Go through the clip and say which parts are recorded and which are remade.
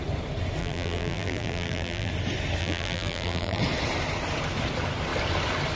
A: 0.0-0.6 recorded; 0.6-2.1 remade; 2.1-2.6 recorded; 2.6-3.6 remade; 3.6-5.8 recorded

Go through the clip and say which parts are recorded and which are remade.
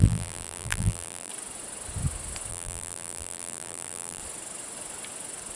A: 0.0-1.3 remade; 1.3-2.5 recorded; 2.5-4.2 remade; 4.2-5.6 recorded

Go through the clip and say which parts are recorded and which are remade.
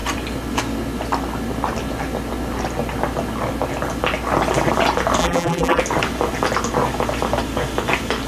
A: 0.0-5.2 recorded; 5.2-5.8 remade; 5.8-8.3 recorded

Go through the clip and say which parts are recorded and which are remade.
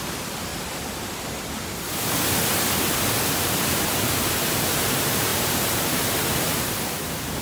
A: 0.0-0.5 remade; 0.5-3.3 recorded; 3.3-5.3 remade; 5.3-5.9 recorded; 5.9-7.4 remade